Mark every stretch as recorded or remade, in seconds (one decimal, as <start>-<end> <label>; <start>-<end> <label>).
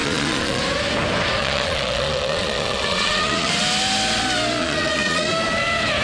0.0-0.6 remade; 0.6-1.4 recorded; 1.4-3.5 remade; 3.5-4.6 recorded; 4.6-5.3 remade; 5.3-6.0 recorded